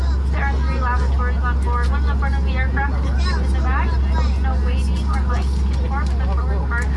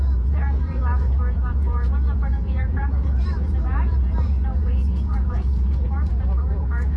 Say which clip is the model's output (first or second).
second